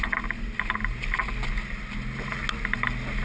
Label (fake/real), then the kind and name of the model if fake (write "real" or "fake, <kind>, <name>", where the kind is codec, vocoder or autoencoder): real